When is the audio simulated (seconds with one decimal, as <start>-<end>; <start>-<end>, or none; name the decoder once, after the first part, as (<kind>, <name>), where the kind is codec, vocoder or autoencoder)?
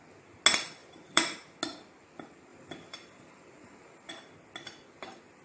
0.8-1.6 (vocoder, BigVGAN v2); 2.5-4.1